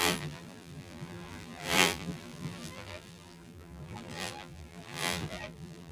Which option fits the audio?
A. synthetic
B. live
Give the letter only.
A